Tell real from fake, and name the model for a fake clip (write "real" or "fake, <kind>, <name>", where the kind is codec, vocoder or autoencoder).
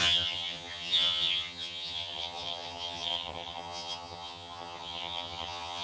fake, vocoder, HiFi-GAN